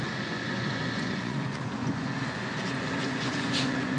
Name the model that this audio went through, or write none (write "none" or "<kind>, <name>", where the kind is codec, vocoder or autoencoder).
vocoder, Vocos